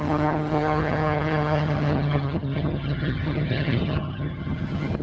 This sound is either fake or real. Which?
fake